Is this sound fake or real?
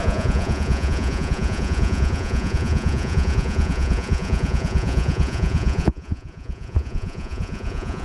fake